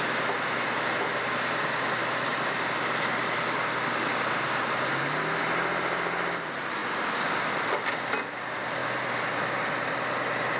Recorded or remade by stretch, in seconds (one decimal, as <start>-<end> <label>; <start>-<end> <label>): 0.0-10.6 recorded

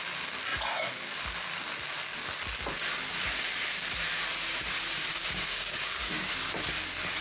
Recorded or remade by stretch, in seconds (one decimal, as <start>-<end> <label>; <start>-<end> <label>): 0.0-5.1 recorded; 5.1-6.3 remade; 6.3-7.2 recorded